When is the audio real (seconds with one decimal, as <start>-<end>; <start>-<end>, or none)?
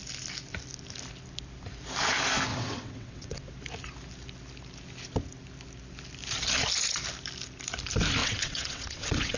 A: 0.0-2.5; 3.5-8.2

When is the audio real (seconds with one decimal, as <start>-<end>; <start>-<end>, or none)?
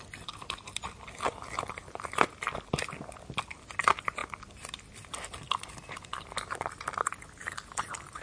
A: 0.0-8.2